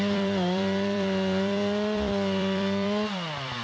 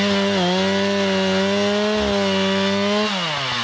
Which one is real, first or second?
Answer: second